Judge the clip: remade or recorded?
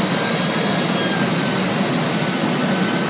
recorded